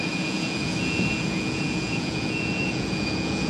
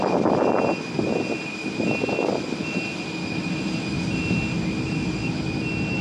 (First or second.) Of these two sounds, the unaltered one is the second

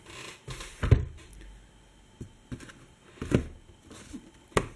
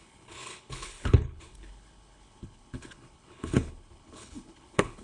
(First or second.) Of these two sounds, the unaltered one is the first